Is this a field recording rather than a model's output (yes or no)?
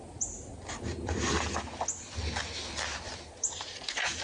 yes